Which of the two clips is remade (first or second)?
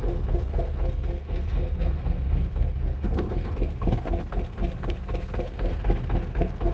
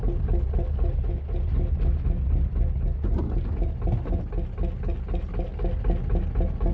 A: first